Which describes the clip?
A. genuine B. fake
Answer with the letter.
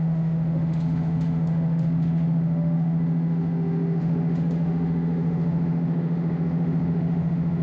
B